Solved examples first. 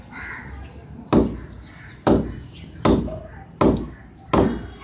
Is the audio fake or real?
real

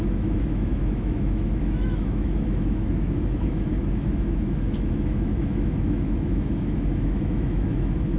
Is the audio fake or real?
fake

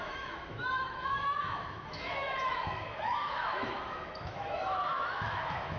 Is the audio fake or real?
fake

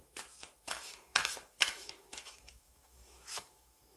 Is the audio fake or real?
fake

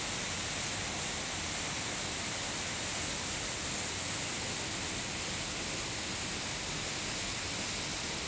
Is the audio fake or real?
real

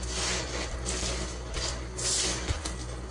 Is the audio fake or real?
real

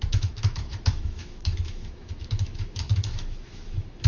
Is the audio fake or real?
fake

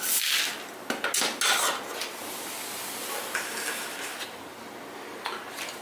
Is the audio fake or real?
real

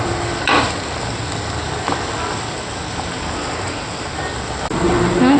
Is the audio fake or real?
real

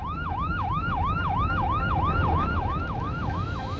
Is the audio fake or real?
fake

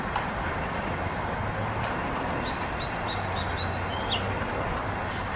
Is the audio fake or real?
real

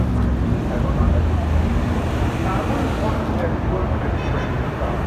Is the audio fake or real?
real